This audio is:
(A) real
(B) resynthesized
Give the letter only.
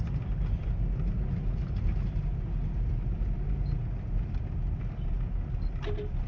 A